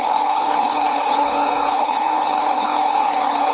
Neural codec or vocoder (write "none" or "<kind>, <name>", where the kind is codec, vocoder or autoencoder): codec, HILCodec